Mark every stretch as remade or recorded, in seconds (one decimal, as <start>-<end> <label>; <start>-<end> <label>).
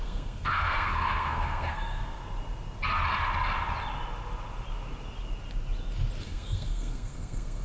0.0-2.2 remade; 2.2-6.2 recorded; 6.2-7.6 remade